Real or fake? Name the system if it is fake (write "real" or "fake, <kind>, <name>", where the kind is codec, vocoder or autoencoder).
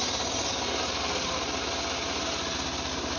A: real